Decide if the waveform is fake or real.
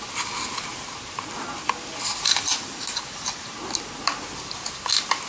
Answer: real